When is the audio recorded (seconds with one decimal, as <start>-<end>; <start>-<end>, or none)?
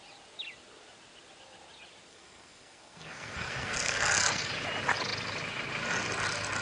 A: 0.0-2.1; 4.5-6.6